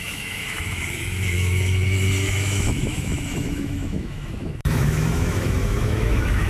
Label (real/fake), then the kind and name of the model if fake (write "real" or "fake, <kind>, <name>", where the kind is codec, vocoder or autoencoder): fake, autoencoder, DAC-VAE